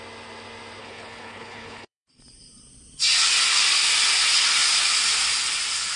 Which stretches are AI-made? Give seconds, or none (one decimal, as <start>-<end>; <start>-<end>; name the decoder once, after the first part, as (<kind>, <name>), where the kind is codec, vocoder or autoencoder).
0.8-2.2 (codec, HILCodec)